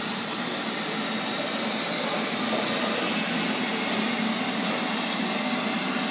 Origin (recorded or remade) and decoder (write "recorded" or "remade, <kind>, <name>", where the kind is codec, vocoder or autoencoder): recorded